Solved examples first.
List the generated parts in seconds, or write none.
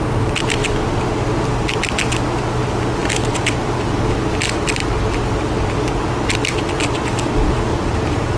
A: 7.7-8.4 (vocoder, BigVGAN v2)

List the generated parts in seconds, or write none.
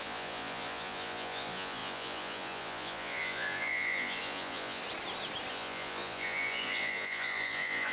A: 0.0-4.8 (vocoder, Vocos); 5.5-7.9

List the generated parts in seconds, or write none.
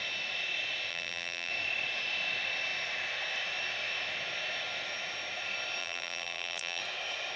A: 0.9-1.5 (vocoder, BigVGAN v2); 5.8-6.8